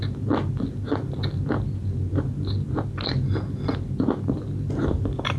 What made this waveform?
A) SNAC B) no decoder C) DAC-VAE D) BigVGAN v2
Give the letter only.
B